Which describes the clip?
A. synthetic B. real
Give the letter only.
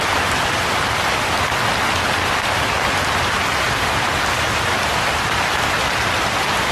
B